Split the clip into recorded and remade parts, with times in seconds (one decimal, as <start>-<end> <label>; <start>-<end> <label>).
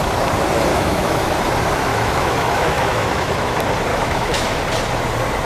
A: 0.0-0.7 recorded; 0.7-1.5 remade; 1.5-1.9 recorded; 1.9-3.5 remade; 3.5-3.9 recorded; 3.9-4.6 remade; 4.6-5.5 recorded